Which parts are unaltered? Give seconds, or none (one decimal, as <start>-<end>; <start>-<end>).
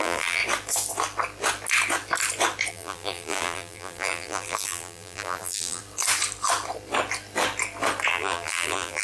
0.4-2.7; 5.8-8.1